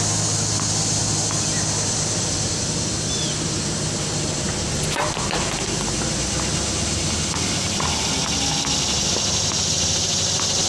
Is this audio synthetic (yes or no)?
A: no